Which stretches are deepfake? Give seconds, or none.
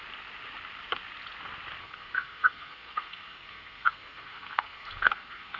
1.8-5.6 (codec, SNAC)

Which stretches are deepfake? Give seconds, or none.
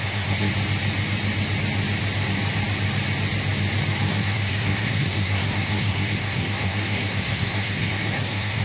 0.0-0.5 (codec, SNAC); 4.1-8.6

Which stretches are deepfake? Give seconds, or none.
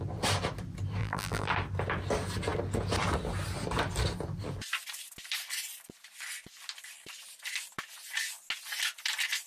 1.0-1.5 (vocoder, BigVGAN v2)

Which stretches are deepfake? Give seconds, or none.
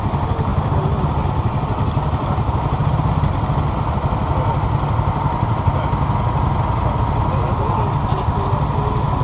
none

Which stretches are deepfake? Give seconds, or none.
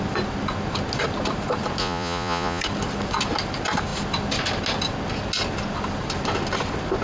1.8-2.6 (vocoder, Vocos)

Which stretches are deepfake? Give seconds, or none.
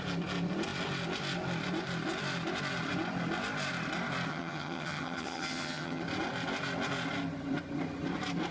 4.3-6.0 (vocoder, HiFi-GAN)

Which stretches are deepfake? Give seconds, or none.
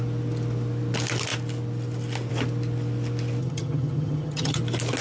3.4-4.6 (vocoder, HiFi-GAN)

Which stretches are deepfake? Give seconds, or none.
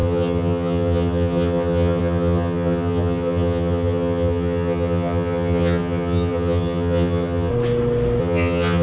0.0-7.5 (vocoder, HiFi-GAN); 8.2-8.8